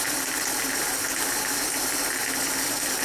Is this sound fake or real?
real